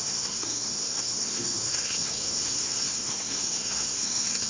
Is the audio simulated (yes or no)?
yes